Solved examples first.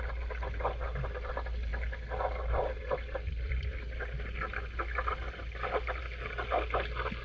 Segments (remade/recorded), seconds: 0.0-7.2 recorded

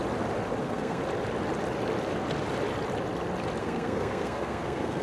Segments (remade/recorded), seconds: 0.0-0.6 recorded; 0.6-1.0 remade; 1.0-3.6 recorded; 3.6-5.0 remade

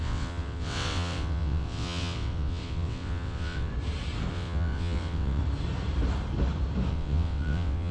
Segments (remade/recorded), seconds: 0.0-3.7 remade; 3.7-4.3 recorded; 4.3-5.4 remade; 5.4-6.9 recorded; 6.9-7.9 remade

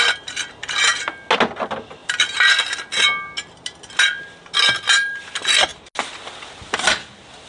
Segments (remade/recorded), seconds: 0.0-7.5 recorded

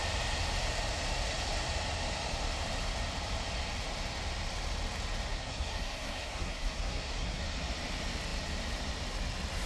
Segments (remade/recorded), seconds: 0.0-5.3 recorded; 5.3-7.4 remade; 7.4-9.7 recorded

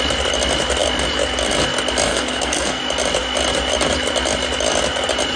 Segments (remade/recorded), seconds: 0.0-2.1 recorded; 2.1-2.8 remade; 2.8-5.4 recorded